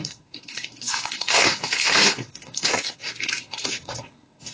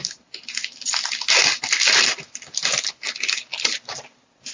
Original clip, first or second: second